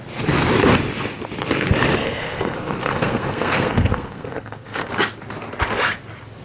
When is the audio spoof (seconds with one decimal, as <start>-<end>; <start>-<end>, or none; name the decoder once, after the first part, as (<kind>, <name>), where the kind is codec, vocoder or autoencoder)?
2.0-4.9 (codec, SNAC)